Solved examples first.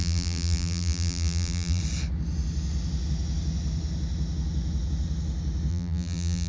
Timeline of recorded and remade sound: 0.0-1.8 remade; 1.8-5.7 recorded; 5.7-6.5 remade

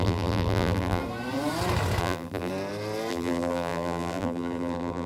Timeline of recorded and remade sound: 0.0-1.0 remade; 1.0-2.0 recorded; 2.0-2.5 remade; 2.5-3.1 recorded; 3.1-5.1 remade

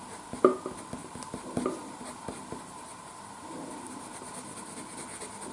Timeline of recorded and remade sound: 0.0-1.0 recorded; 1.0-3.5 remade; 3.5-5.5 recorded

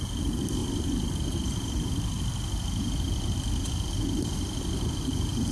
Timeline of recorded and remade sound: 0.0-0.6 recorded; 0.6-3.9 remade; 3.9-5.5 recorded

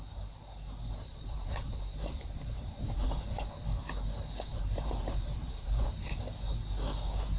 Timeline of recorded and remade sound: 0.0-1.1 recorded; 1.1-3.4 remade; 3.4-4.5 recorded; 4.5-6.2 remade; 6.2-7.4 recorded

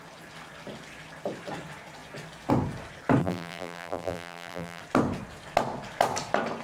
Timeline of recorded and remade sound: 0.0-3.2 recorded; 3.2-4.8 remade; 4.8-6.6 recorded

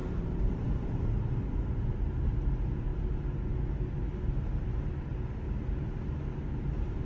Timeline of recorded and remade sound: 0.0-1.1 remade; 1.1-7.0 recorded